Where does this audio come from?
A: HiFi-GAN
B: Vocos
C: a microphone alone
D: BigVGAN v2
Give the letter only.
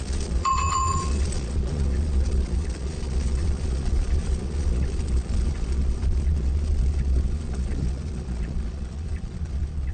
B